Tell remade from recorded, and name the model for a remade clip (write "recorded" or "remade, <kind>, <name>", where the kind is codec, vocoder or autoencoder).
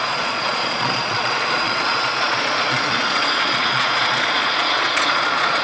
remade, vocoder, Vocos